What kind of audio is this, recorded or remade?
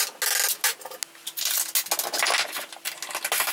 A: recorded